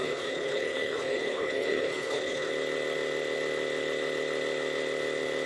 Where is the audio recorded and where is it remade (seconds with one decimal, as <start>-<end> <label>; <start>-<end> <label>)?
0.0-2.5 remade; 2.5-5.5 recorded